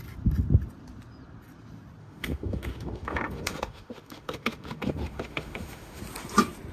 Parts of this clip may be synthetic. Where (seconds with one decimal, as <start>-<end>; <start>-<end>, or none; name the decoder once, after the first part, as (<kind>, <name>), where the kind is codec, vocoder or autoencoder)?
2.0-6.0 (autoencoder, DAC-VAE)